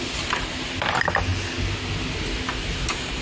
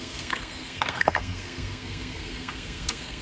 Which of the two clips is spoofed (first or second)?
second